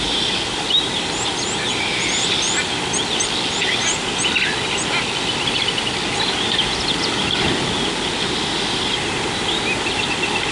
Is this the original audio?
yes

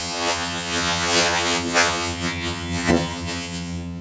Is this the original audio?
no